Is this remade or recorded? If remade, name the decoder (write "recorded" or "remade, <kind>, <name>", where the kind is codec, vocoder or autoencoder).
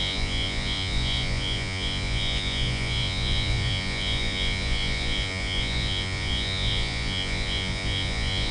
remade, vocoder, Vocos